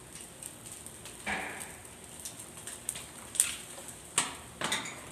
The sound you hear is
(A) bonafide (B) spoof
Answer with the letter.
A